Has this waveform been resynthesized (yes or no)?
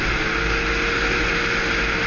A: no